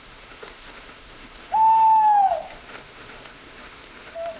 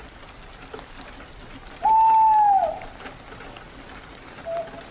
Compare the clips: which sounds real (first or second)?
second